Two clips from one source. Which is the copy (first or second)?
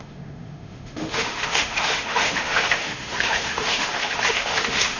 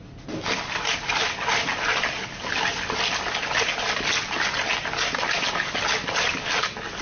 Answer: first